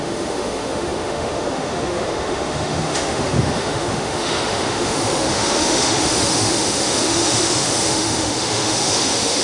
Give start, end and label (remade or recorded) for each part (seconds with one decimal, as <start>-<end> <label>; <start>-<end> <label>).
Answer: 0.0-9.4 remade